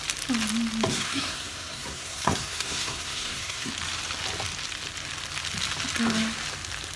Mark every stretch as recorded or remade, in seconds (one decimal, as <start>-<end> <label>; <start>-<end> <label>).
0.0-0.9 recorded; 0.9-3.7 remade; 3.7-7.0 recorded